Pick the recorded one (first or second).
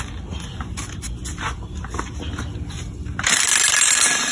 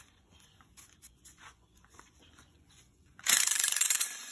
first